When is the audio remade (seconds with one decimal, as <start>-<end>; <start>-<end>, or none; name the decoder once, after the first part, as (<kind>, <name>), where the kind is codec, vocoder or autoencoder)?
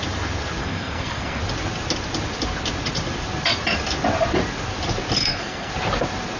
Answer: 0.6-1.4 (codec, SNAC); 5.2-5.7